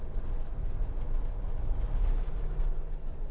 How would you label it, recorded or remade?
recorded